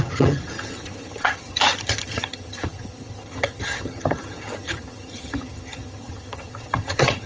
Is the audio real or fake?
fake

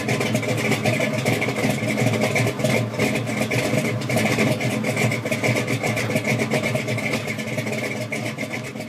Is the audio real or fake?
real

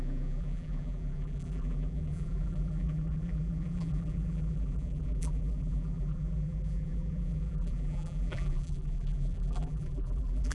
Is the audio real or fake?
fake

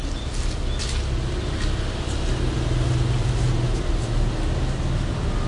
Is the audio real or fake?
real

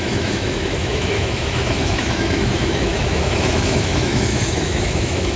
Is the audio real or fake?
fake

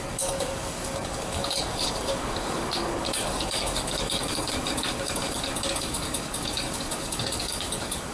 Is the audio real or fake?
fake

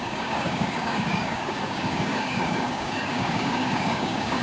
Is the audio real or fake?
fake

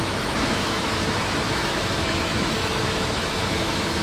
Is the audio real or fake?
fake